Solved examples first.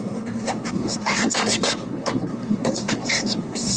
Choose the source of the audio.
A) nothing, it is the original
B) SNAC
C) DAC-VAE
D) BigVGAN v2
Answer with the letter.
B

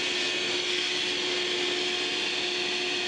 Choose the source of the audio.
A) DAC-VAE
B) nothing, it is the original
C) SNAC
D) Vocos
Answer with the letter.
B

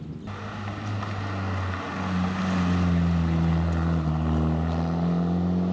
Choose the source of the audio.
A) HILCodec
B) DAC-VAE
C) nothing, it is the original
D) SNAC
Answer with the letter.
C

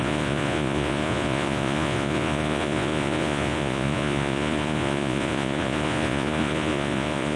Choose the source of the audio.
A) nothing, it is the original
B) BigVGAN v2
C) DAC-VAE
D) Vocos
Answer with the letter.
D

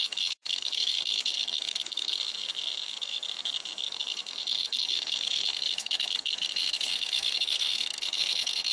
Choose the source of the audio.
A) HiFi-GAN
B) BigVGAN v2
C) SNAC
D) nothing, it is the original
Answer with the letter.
C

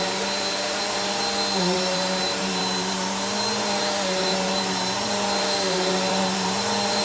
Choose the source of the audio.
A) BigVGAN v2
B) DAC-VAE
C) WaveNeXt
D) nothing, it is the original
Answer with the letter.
A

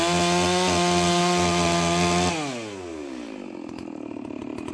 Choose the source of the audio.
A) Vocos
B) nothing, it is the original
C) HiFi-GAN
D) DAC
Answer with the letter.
B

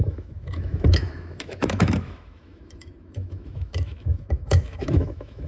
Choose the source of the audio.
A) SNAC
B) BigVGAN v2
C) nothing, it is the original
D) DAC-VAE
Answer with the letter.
D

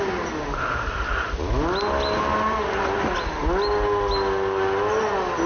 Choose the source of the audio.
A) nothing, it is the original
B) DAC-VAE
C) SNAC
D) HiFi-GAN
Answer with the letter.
A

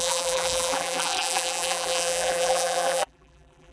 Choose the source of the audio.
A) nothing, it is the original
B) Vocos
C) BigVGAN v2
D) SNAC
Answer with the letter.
C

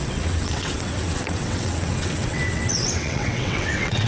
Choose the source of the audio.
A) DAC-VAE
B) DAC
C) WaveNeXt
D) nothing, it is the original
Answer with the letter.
C